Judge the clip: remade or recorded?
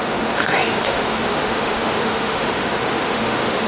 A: remade